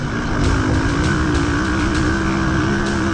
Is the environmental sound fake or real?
real